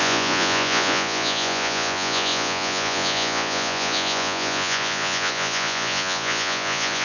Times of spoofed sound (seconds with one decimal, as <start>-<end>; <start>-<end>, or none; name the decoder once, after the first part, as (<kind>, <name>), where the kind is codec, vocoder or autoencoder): 0.0-7.0 (vocoder, Vocos)